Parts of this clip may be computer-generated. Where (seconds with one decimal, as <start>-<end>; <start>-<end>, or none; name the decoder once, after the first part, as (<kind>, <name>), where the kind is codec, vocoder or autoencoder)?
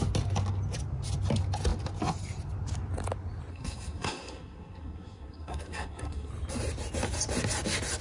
3.5-6.3 (codec, SNAC)